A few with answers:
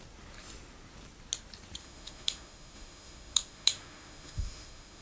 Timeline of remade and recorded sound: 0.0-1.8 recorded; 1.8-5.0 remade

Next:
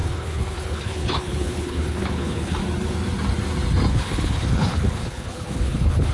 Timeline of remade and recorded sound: 0.0-2.6 remade; 2.6-3.9 recorded; 3.9-6.1 remade

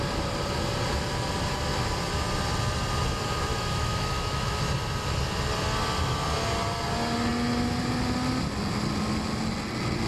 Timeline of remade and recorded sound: 0.0-3.5 recorded; 3.5-4.6 remade; 4.6-10.1 recorded